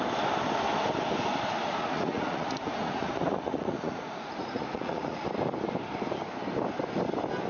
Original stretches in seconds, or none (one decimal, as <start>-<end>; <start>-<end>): 0.0-1.6; 5.2-7.5